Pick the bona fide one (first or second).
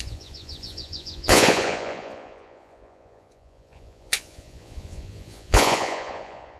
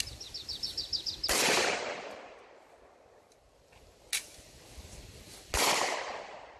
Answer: second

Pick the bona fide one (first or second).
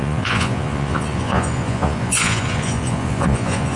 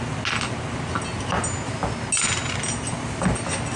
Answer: second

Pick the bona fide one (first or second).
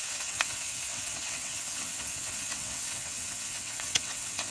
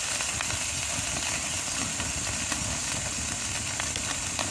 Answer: second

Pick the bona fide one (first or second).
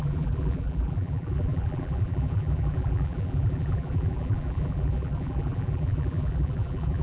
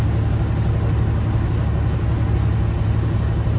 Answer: second